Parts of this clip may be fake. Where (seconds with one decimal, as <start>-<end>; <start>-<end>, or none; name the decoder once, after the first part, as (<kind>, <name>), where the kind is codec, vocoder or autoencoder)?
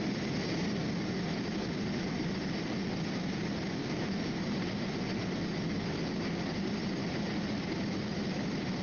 3.8-5.0 (vocoder, BigVGAN v2); 7.0-7.6; 8.1-8.8